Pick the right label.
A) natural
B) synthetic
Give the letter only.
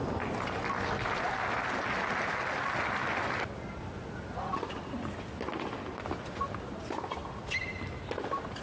A